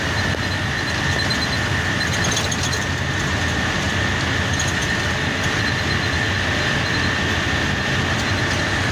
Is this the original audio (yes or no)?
yes